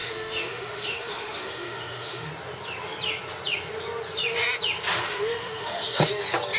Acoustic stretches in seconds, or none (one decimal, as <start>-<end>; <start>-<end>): 2.3-5.1; 6.1-6.6